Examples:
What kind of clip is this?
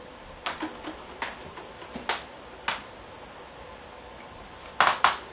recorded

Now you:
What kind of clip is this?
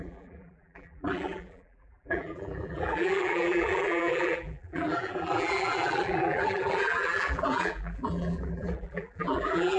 remade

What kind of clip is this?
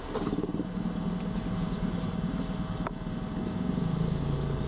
remade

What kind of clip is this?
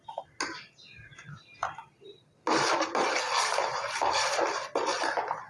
recorded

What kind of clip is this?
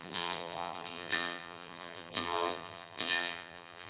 remade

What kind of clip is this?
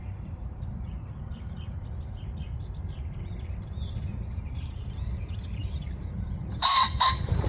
remade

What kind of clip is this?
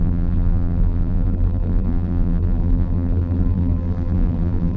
remade